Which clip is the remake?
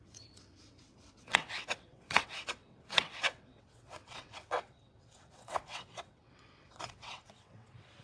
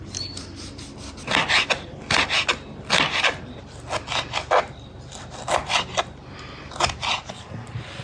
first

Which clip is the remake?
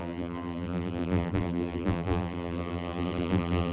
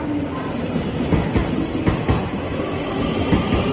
first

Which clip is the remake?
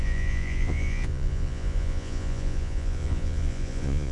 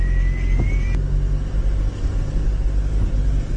first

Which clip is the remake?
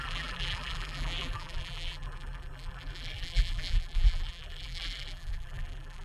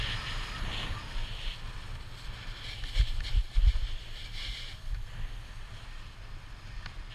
first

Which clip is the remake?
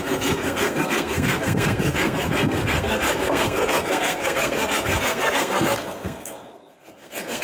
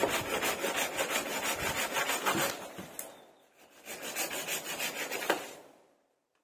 first